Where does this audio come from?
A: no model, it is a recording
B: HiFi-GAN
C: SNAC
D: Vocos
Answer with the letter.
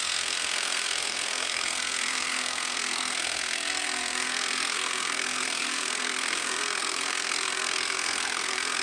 C